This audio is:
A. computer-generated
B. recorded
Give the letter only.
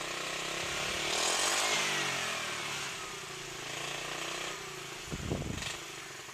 B